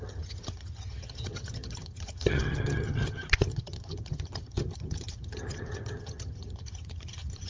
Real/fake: fake